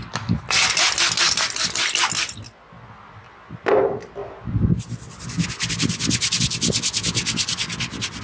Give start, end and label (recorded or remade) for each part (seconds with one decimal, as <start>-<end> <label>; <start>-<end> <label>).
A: 0.0-8.2 recorded